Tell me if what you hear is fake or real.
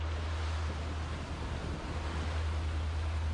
real